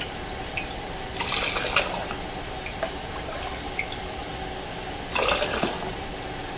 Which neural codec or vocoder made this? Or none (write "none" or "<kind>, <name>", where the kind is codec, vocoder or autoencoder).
none